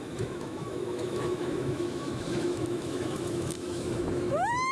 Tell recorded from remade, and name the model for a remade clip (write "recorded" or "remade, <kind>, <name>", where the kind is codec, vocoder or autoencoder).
remade, autoencoder, DAC-VAE